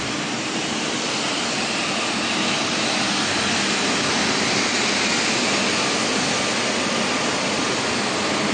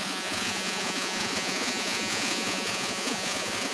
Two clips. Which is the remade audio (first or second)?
second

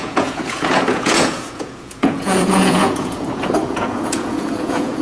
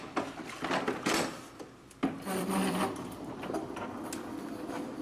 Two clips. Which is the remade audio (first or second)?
first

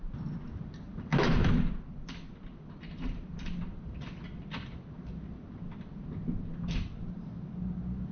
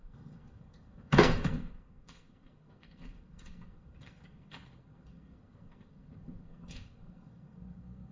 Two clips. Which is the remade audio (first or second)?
second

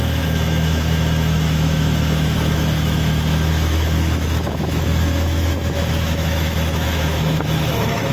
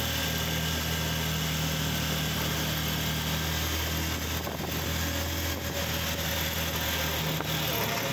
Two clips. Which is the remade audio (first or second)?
first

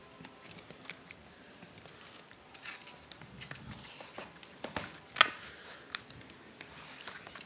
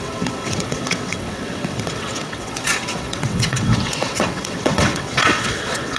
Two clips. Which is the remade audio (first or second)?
second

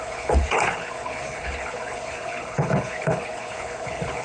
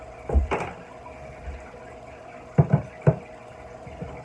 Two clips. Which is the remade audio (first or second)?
first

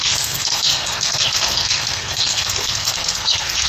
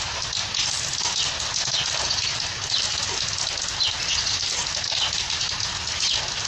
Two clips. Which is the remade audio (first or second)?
first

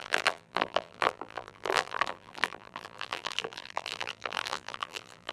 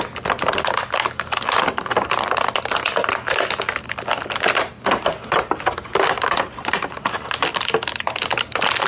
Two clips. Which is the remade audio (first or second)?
first